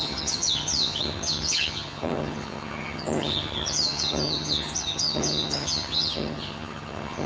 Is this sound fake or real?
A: fake